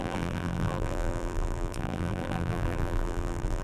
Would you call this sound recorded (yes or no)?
no